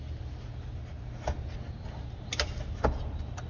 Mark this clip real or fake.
real